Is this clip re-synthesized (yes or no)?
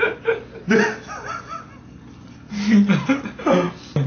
no